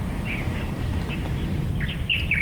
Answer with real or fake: fake